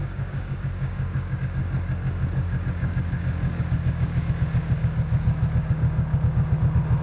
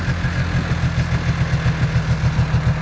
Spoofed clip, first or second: first